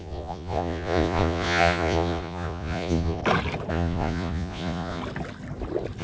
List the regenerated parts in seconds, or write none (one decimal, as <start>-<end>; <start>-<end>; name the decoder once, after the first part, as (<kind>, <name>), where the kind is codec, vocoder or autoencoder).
0.0-3.2 (vocoder, Vocos); 3.7-5.0